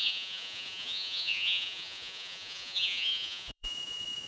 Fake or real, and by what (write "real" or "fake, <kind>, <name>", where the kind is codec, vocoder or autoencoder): fake, vocoder, Vocos